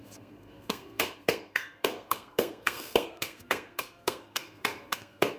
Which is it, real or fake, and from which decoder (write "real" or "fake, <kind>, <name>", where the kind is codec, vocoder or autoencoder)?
fake, codec, SNAC